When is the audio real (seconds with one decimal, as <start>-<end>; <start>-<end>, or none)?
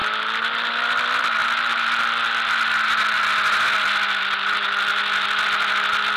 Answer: 0.0-6.2